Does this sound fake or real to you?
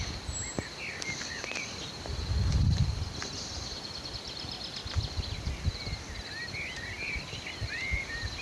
real